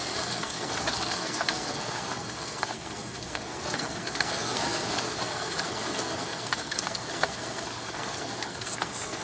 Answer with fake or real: fake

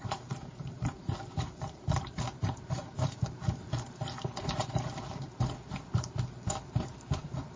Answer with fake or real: fake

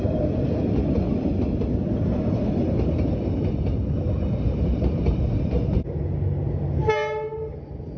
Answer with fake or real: real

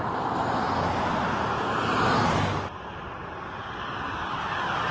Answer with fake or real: real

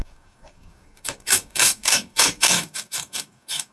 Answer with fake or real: fake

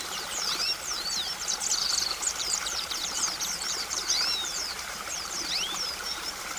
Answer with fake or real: fake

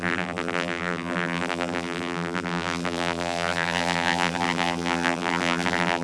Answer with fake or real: fake